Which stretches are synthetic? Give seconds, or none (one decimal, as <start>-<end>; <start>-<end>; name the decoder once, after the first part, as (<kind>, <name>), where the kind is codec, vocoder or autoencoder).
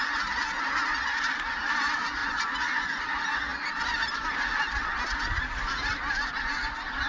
2.2-3.0 (vocoder, Vocos)